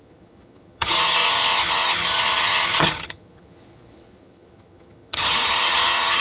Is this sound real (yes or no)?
no